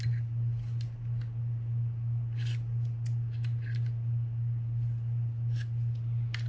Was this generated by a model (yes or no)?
no